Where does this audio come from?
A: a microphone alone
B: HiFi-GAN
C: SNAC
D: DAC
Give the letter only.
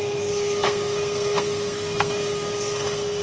C